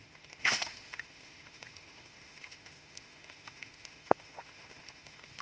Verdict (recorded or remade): remade